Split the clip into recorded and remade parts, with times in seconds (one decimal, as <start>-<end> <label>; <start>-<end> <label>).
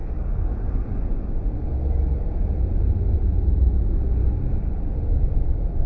0.0-0.6 remade; 0.6-5.9 recorded